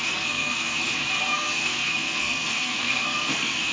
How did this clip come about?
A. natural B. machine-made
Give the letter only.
B